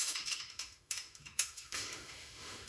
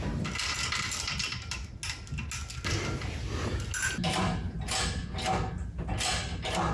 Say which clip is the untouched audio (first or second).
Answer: second